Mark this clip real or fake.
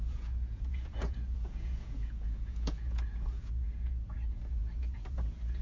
fake